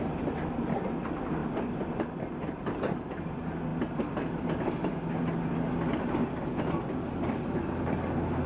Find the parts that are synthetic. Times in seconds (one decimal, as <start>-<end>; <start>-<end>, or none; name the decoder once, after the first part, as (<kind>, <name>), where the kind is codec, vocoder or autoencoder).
none